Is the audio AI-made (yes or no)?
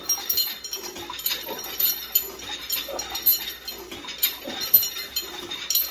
no